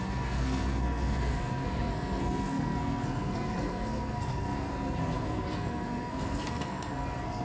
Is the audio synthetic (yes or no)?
yes